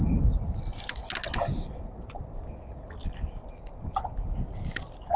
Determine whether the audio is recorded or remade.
recorded